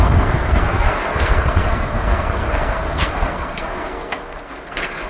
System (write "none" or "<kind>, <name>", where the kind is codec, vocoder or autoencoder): codec, SNAC